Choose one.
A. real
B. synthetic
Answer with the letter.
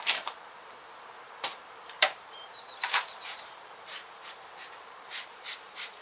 B